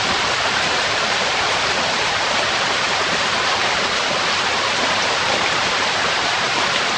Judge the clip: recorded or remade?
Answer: recorded